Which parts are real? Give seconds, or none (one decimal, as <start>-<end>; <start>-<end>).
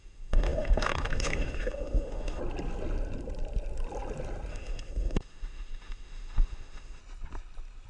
2.4-4.5; 7.0-7.9